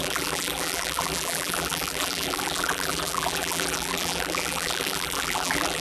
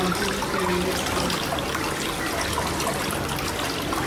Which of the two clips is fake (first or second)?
first